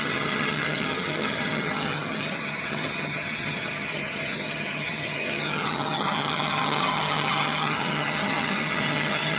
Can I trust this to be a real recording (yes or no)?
no